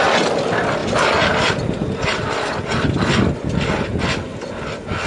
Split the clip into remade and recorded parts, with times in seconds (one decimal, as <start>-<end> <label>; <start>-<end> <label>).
0.0-0.8 recorded; 0.8-3.1 remade; 3.1-5.1 recorded